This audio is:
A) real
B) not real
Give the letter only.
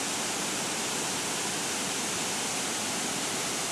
A